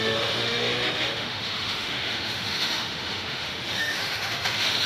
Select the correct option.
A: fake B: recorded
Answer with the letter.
A